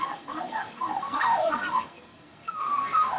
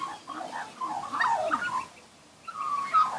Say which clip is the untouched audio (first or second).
second